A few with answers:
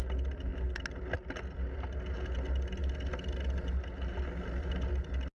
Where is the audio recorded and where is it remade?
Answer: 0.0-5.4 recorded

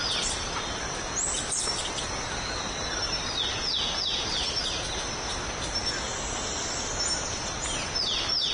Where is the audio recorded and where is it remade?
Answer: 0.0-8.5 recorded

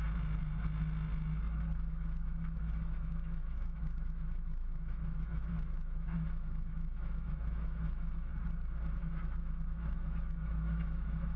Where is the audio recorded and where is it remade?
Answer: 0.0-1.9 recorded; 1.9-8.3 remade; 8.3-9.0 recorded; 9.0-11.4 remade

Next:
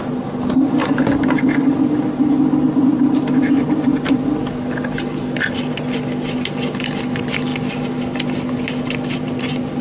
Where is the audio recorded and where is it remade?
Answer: 0.0-9.8 recorded